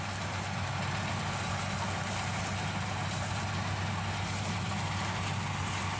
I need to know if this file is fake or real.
real